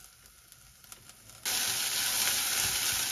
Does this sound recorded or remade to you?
recorded